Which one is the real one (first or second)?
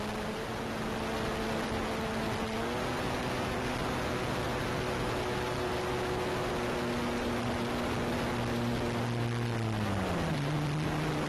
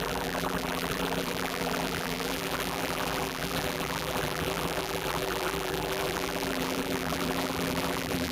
first